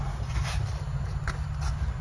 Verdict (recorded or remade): recorded